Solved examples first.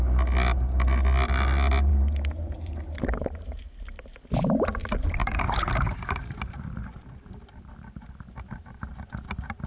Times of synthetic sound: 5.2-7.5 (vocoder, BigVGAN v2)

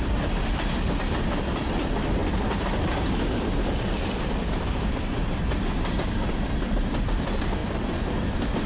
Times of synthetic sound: 0.0-8.7 (vocoder, BigVGAN v2)

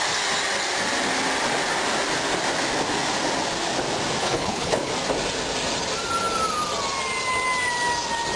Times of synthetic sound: 4.2-4.9 (codec, HILCodec)